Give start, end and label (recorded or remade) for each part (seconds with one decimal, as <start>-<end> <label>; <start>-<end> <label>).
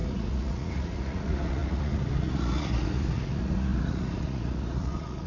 0.0-5.3 remade